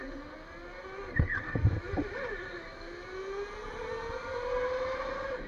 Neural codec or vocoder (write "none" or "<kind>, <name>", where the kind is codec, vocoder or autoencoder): none